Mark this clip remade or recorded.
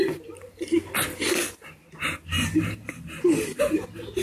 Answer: recorded